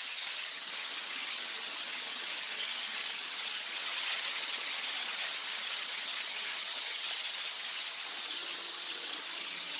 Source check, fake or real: fake